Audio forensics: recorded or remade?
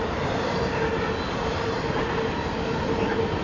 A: recorded